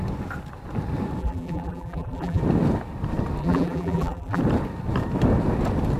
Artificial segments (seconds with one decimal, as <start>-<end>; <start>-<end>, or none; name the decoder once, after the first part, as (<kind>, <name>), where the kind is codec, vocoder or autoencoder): 1.2-2.4 (vocoder, BigVGAN v2); 3.4-4.4